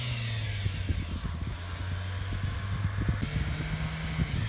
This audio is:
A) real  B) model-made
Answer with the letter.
A